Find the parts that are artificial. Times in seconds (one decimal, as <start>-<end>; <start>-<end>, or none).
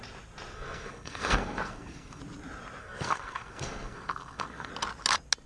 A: 0.5-2.2; 2.8-4.7